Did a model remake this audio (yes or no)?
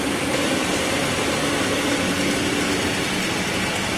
no